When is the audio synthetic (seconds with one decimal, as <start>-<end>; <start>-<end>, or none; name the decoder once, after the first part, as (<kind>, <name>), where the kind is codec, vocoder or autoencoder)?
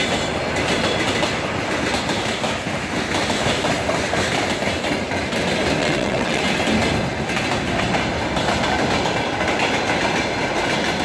5.8-6.4 (vocoder, WaveNeXt)